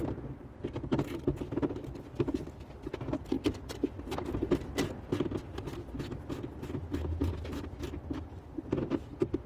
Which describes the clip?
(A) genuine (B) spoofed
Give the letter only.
A